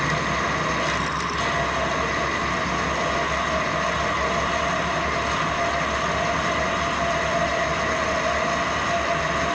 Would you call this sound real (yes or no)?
yes